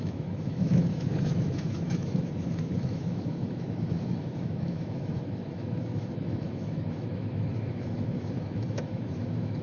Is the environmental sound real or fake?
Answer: fake